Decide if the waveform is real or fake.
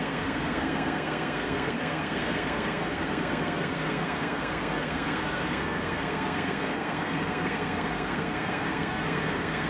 fake